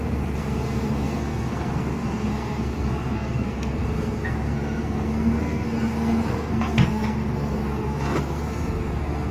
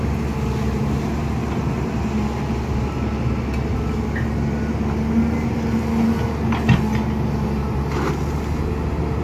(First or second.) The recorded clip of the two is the second